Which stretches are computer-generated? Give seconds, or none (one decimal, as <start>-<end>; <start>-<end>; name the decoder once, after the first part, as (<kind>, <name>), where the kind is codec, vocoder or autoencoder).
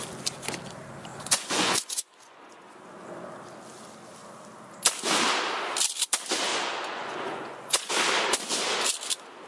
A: 1.1-3.1 (vocoder, Vocos); 6.5-7.9